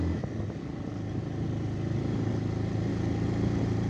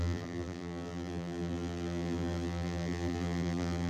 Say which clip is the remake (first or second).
second